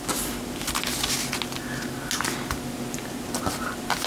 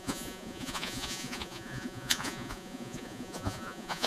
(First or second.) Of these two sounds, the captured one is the first